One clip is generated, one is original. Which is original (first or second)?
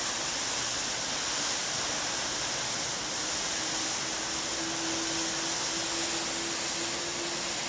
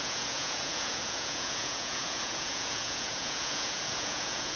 first